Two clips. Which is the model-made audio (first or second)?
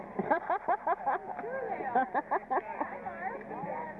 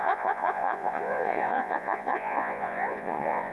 second